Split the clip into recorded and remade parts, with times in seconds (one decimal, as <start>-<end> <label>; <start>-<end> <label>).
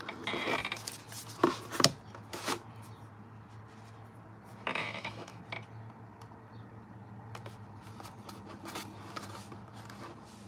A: 0.0-4.7 recorded; 4.7-5.4 remade; 5.4-10.5 recorded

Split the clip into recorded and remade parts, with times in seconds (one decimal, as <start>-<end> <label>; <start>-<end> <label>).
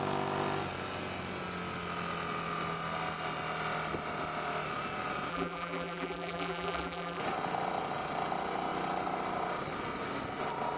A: 0.0-5.3 recorded; 5.3-7.2 remade; 7.2-10.8 recorded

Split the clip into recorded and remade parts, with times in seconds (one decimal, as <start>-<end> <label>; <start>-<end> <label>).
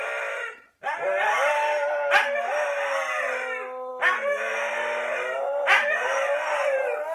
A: 0.0-7.1 recorded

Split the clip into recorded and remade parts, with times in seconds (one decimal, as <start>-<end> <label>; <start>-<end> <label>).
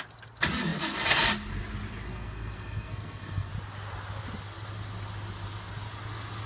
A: 0.0-2.1 recorded; 2.1-3.5 remade; 3.5-6.5 recorded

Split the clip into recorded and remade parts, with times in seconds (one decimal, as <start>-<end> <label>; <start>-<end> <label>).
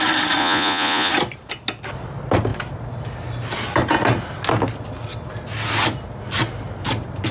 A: 0.0-0.4 recorded; 0.4-1.1 remade; 1.1-7.3 recorded